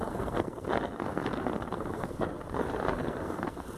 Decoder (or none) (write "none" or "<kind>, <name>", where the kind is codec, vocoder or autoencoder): codec, SNAC